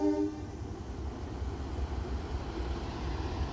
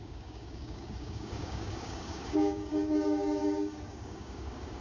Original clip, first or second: first